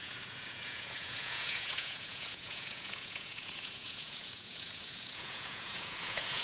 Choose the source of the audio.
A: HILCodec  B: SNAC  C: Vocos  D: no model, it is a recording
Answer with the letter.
C